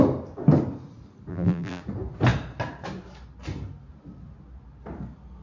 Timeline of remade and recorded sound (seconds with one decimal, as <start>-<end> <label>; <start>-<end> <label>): 0.0-1.3 recorded; 1.3-1.8 remade; 1.8-5.4 recorded